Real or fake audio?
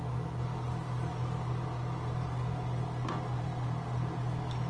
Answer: real